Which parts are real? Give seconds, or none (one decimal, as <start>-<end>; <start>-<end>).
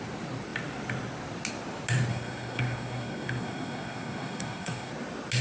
0.0-2.1; 4.9-5.4